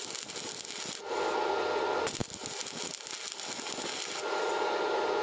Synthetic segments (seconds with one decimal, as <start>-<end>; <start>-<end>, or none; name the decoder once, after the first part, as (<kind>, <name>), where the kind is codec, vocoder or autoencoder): none